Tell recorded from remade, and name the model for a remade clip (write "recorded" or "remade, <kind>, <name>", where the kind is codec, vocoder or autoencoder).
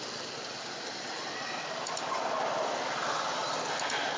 recorded